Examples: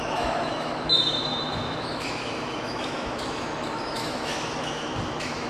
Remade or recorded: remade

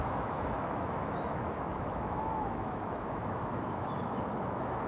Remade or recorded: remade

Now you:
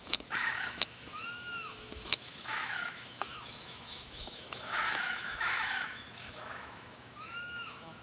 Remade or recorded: remade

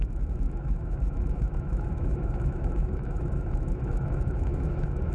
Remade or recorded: remade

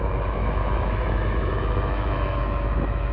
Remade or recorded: remade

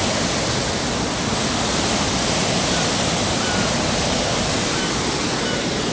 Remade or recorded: recorded